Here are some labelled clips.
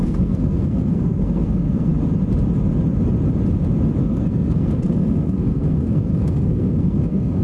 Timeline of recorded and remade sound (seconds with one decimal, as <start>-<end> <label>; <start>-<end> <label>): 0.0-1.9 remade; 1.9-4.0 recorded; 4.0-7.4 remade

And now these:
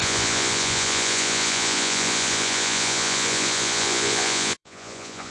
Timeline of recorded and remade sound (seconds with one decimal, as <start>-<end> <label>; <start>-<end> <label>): 0.0-5.3 remade

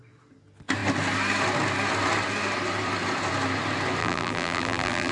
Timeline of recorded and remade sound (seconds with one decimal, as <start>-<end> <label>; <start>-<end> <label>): 0.0-4.0 recorded; 4.0-5.1 remade

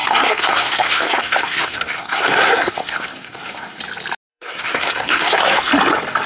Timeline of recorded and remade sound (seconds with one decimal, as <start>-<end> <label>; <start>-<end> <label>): 0.0-3.8 remade; 3.8-4.3 recorded; 4.3-5.7 remade; 5.7-6.3 recorded

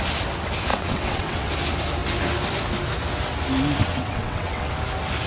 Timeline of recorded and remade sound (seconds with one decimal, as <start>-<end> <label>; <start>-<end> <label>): 0.0-0.7 recorded; 0.7-1.5 remade; 1.5-3.8 recorded; 3.8-4.7 remade; 4.7-5.3 recorded

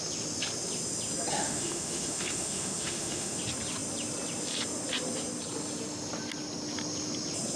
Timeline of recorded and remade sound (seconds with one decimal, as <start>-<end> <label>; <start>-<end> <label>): 0.0-1.3 recorded; 1.3-3.4 remade; 3.4-7.6 recorded